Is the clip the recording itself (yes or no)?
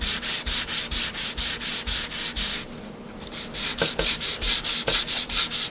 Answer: no